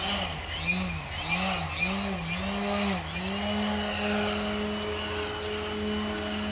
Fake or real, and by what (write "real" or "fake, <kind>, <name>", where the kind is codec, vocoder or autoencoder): real